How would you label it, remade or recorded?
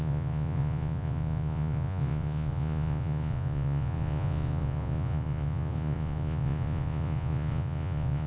remade